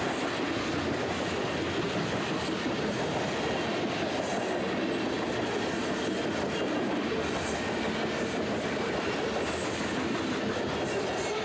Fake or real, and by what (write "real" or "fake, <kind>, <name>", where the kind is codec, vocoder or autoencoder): real